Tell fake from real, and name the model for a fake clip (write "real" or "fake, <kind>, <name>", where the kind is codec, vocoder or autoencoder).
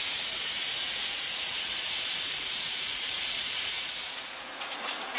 fake, vocoder, Vocos